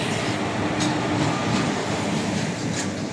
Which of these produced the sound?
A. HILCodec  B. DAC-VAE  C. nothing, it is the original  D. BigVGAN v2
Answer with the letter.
C